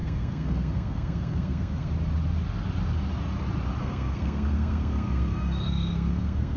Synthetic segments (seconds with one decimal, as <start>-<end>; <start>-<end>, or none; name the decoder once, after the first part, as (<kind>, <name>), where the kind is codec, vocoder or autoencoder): 0.0-1.9 (codec, SNAC); 3.8-6.6